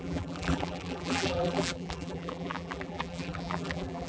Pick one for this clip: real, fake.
fake